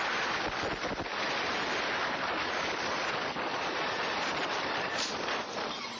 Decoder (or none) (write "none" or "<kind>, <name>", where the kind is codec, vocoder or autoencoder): none